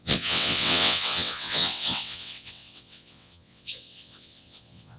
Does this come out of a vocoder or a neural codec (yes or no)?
yes